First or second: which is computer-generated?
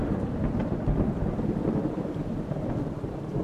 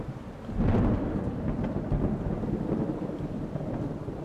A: first